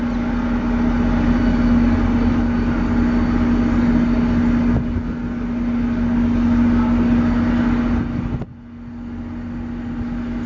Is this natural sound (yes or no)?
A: yes